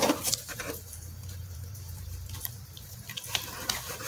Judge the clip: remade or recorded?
remade